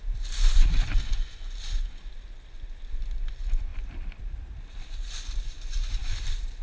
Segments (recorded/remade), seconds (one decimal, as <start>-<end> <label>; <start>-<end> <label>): 0.0-6.6 recorded